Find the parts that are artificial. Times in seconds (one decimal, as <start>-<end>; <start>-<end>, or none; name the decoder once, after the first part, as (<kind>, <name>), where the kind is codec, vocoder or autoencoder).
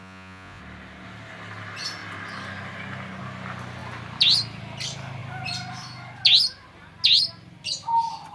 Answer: 0.0-0.6 (vocoder, Vocos)